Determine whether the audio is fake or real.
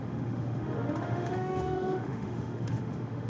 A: fake